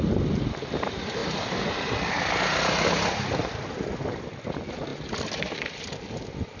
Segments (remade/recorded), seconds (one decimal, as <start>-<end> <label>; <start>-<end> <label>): 0.0-6.6 recorded